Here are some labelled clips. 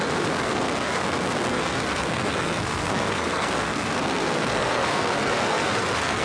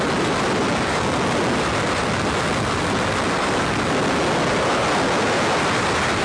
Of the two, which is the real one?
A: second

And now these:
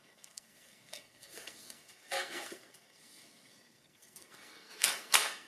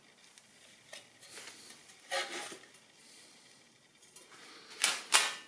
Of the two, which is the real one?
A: second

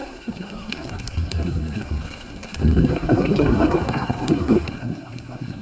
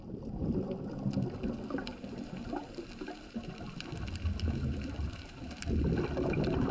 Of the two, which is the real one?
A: second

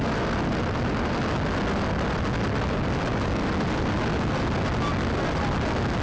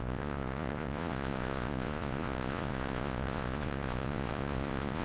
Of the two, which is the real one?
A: first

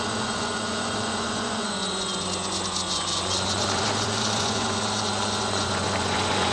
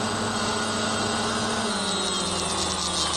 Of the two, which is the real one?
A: second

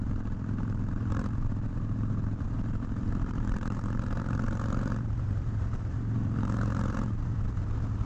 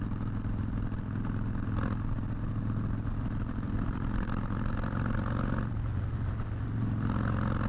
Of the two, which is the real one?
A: second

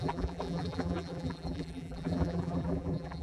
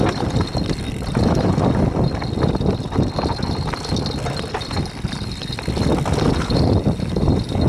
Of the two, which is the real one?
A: second